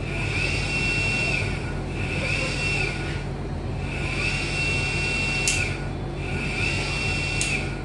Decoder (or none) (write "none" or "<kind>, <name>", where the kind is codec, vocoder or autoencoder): none